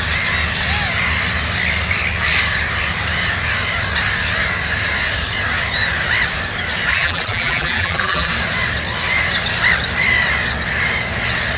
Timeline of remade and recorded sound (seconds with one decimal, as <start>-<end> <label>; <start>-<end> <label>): 0.0-6.9 recorded; 6.9-8.3 remade; 8.3-11.6 recorded